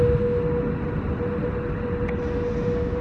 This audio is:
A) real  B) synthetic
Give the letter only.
A